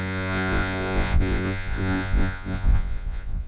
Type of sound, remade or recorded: remade